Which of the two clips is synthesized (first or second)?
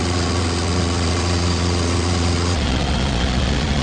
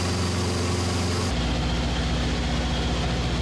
first